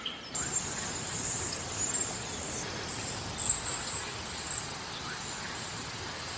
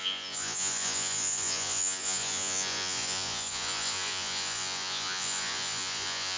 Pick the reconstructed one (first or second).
second